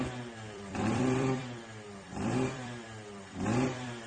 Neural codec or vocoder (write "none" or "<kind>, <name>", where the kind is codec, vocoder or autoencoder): vocoder, BigVGAN v2